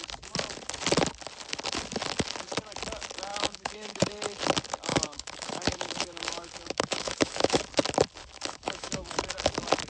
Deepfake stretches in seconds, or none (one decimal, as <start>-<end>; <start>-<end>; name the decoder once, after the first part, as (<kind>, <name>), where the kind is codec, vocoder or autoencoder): 3.3-4.1 (autoencoder, DAC-VAE); 4.9-7.6; 8.2-9.2

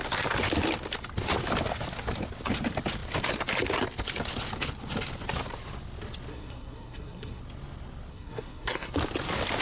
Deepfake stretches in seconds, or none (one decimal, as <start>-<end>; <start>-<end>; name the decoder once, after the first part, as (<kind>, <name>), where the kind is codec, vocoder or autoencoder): 6.3-7.4 (codec, SNAC); 8.1-8.9

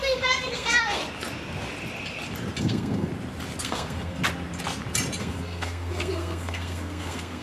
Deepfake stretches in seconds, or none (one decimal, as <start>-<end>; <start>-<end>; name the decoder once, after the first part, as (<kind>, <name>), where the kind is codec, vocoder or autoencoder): 0.0-1.0 (codec, SNAC); 2.6-3.1; 3.6-4.2; 5.2-7.4

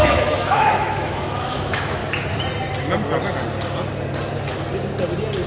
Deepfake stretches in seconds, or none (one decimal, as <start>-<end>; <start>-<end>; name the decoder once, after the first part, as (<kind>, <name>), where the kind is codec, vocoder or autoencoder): 0.0-2.0 (autoencoder, DAC-VAE)

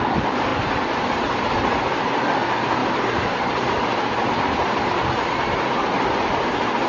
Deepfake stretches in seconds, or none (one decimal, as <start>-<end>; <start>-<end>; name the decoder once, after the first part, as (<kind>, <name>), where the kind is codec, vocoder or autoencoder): 0.5-2.2 (vocoder, BigVGAN v2); 2.8-4.7

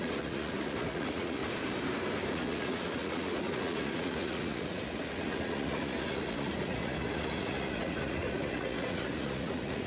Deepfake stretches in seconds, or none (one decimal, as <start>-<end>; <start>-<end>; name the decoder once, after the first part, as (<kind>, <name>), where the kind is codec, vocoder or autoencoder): 0.0-1.4 (vocoder, Vocos); 2.3-9.9